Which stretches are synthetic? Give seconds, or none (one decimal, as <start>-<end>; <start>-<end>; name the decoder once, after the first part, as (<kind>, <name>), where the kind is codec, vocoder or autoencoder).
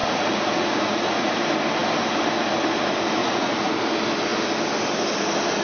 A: 0.0-1.3 (vocoder, Vocos); 3.2-3.7